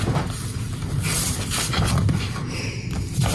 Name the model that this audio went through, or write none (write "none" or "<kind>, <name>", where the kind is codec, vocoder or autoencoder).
vocoder, BigVGAN v2